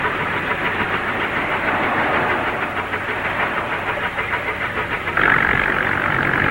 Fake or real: fake